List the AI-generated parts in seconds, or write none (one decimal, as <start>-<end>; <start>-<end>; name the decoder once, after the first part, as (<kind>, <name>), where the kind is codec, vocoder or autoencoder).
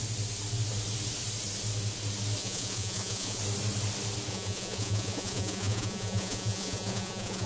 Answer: 2.4-3.4 (vocoder, Vocos); 4.3-7.5